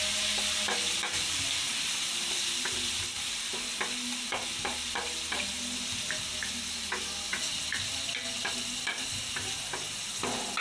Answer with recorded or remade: recorded